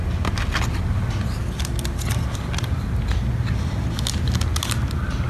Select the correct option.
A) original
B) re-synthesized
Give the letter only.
A